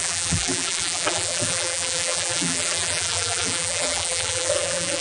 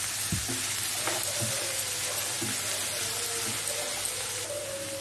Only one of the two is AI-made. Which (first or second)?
first